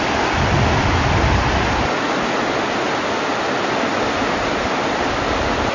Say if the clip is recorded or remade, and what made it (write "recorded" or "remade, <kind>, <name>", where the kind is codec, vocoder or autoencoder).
recorded